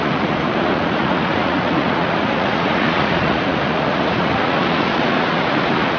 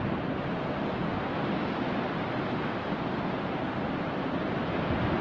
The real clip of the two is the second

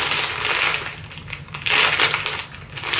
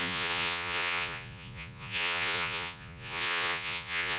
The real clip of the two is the first